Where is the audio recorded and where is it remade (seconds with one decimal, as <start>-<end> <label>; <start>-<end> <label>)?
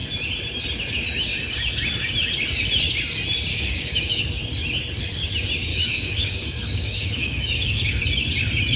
0.0-3.5 recorded; 3.5-4.2 remade; 4.2-5.7 recorded; 5.7-8.0 remade; 8.0-8.8 recorded